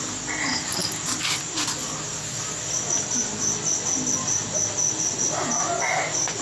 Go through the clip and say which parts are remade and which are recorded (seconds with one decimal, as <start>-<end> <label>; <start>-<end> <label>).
0.0-6.4 recorded